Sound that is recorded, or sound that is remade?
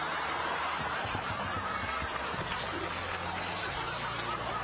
remade